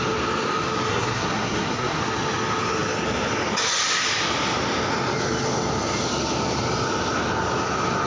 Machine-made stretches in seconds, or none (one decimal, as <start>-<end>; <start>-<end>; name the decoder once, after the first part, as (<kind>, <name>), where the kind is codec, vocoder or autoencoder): 0.9-2.0 (codec, SNAC)